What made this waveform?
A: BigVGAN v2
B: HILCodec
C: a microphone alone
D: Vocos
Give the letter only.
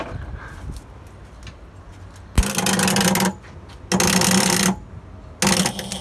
C